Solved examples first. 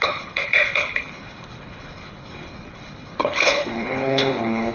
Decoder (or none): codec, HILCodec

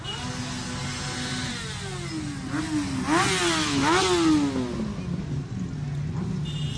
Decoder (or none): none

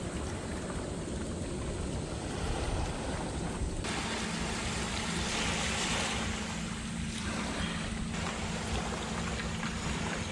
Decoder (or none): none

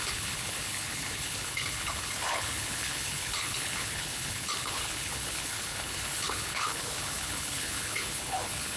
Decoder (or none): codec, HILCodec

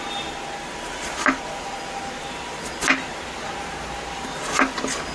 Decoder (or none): none